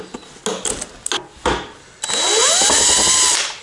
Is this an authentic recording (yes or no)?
yes